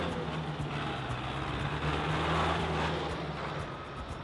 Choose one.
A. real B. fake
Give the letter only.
A